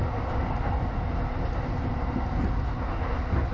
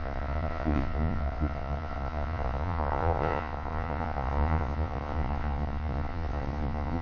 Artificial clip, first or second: second